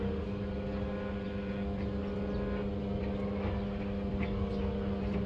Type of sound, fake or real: real